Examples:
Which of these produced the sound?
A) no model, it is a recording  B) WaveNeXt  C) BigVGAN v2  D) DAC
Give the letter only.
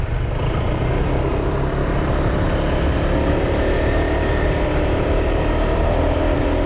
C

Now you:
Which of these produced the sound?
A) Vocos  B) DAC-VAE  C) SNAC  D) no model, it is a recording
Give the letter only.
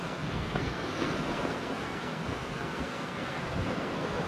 C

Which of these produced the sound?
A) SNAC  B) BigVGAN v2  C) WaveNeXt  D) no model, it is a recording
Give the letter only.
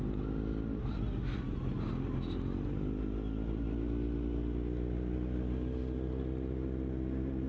D